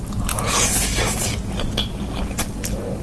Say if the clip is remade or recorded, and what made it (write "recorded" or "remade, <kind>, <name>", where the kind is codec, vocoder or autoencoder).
recorded